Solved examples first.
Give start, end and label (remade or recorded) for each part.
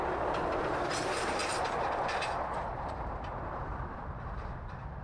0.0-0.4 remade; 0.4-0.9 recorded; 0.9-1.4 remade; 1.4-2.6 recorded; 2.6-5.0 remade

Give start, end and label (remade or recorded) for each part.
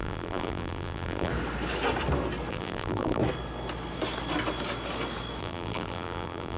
0.0-1.3 remade; 1.3-2.5 recorded; 2.5-3.2 remade; 3.2-5.4 recorded; 5.4-6.6 remade